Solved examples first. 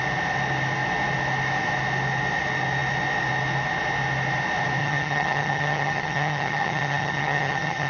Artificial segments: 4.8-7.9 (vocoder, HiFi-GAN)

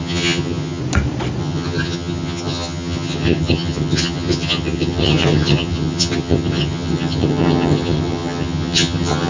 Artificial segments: 0.0-0.8 (vocoder, HiFi-GAN); 1.4-9.3

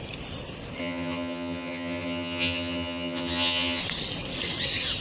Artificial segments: 0.8-3.8 (vocoder, HiFi-GAN)

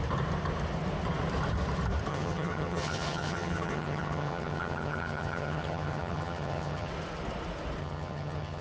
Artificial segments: 2.1-6.9 (vocoder, HiFi-GAN); 7.8-8.6

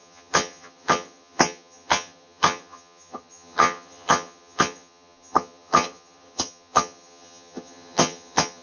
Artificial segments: 0.0-8.6 (vocoder, HiFi-GAN)

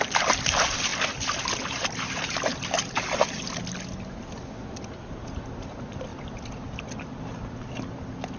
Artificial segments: none

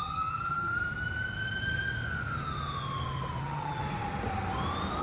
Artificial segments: 0.0-0.7 (vocoder, HiFi-GAN); 3.4-3.8

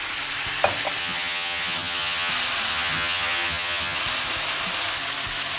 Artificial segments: 1.0-2.3 (vocoder, HiFi-GAN); 2.7-4.0